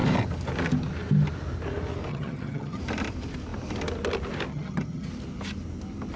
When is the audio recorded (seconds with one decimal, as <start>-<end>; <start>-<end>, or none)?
0.0-2.1; 2.8-4.5; 5.1-6.2